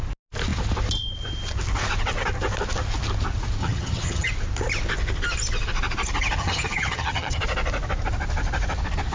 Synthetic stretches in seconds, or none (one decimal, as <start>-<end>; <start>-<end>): 3.6-4.3; 6.4-7.4